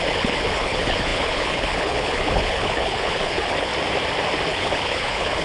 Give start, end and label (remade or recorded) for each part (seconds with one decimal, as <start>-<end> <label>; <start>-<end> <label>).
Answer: 0.0-3.7 remade; 3.7-4.5 recorded; 4.5-5.4 remade